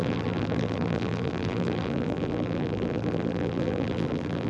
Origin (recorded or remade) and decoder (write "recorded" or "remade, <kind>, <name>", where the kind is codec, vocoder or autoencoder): remade, vocoder, BigVGAN v2